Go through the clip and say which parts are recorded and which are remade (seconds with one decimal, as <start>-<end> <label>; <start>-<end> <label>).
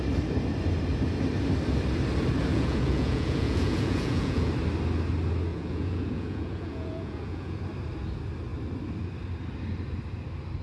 0.0-2.5 recorded; 2.5-4.5 remade; 4.5-5.5 recorded; 5.5-7.6 remade; 7.6-10.6 recorded